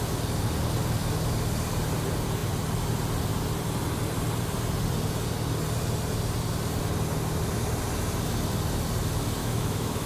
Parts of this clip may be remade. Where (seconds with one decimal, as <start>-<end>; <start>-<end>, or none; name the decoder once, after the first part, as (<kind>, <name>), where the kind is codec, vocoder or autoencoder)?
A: 9.4-10.1 (autoencoder, DAC-VAE)